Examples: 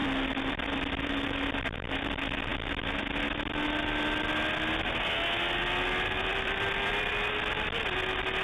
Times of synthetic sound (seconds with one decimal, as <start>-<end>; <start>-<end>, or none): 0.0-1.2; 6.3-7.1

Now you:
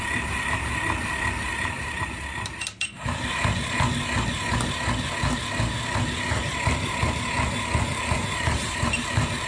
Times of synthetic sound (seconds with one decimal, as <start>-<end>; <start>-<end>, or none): 1.5-2.1; 7.9-9.1

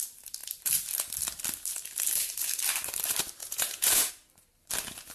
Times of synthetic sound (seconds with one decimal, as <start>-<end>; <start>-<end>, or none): 3.4-4.1

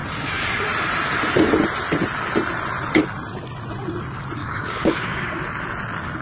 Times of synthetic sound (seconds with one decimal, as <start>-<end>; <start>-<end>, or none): 4.4-5.4

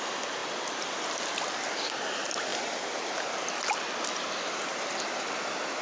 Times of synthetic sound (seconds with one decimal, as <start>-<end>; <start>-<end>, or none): 0.4-1.9; 2.5-5.8